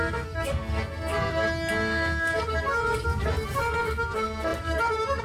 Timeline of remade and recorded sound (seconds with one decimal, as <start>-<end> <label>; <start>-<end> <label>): 0.0-1.1 remade; 1.1-1.7 recorded; 1.7-5.2 remade